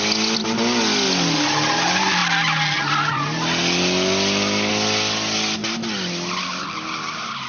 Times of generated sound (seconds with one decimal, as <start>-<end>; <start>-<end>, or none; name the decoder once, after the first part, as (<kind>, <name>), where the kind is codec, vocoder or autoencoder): none